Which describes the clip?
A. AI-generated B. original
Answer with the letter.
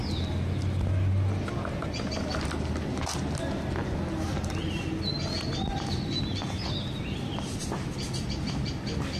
B